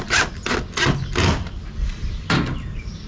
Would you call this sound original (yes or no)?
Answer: yes